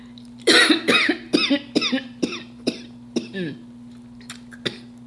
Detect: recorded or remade recorded